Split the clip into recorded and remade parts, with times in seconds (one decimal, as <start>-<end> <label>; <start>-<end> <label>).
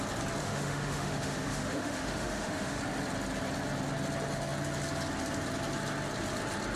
0.0-0.4 recorded; 0.4-2.8 remade; 2.8-6.8 recorded